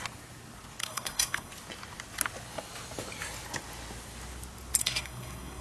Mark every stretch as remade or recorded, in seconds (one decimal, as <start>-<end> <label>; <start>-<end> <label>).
0.0-0.8 recorded; 0.8-1.5 remade; 1.5-4.8 recorded; 4.8-5.6 remade